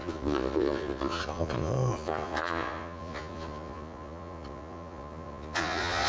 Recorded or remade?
remade